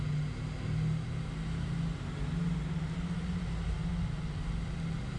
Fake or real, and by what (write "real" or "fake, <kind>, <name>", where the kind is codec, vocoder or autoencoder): real